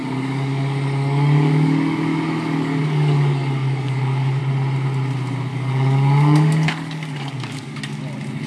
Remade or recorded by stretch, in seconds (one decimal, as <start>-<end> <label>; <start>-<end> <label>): 0.0-4.4 remade; 4.4-5.5 recorded; 5.5-8.0 remade; 8.0-8.5 recorded